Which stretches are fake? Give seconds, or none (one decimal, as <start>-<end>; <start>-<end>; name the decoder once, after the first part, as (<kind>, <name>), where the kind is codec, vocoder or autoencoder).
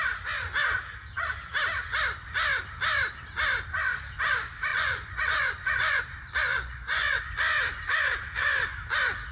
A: 4.7-6.0 (vocoder, Vocos); 6.5-7.2